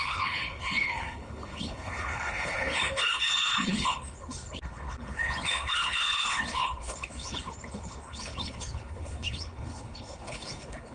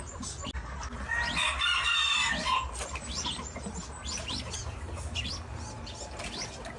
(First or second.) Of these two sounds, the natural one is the second